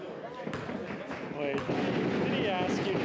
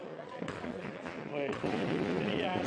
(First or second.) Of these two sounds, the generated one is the second